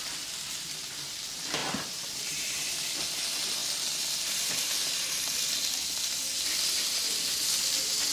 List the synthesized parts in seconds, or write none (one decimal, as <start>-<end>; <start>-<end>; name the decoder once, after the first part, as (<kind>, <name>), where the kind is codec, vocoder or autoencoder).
1.6-2.7 (vocoder, BigVGAN v2)